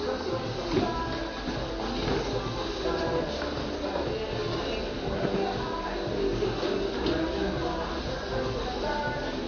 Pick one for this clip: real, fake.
real